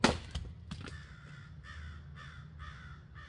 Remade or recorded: recorded